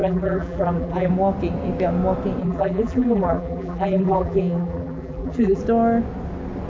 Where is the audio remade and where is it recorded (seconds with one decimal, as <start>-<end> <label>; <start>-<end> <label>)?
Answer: 0.0-1.1 remade; 1.1-2.4 recorded; 2.4-5.6 remade; 5.6-6.7 recorded